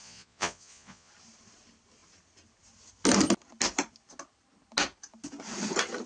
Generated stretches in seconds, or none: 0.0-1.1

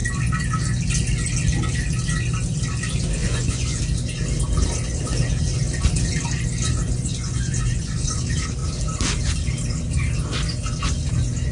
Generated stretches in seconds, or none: 3.2-3.8; 6.8-8.2

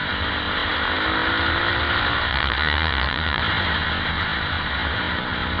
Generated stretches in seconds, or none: 2.3-3.4

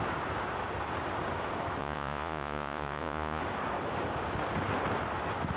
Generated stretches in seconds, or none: 1.8-3.4

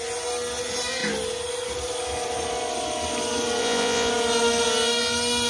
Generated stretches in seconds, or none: 3.6-4.1

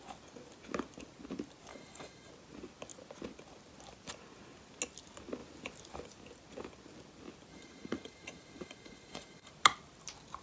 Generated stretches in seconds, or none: 1.7-2.3; 7.5-9.5

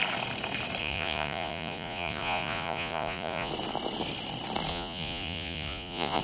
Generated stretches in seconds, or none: 0.8-3.5; 4.7-6.2